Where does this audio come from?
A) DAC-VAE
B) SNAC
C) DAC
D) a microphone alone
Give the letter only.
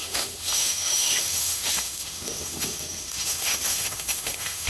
A